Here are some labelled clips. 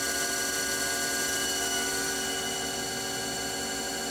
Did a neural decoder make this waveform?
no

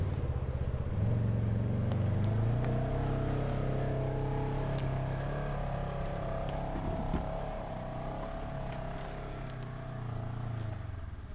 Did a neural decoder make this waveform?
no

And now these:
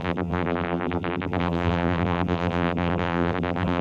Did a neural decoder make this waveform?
yes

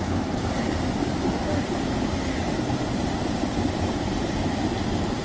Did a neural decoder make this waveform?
no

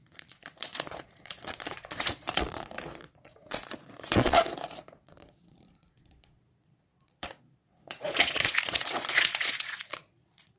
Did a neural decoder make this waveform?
yes